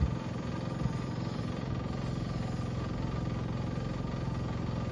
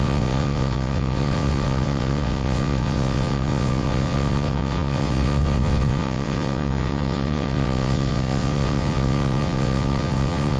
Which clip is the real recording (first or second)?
first